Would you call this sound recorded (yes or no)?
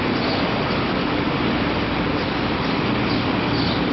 yes